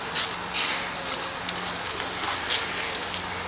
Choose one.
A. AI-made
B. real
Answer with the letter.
B